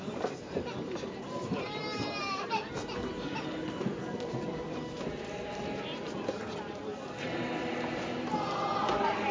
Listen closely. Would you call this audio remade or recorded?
recorded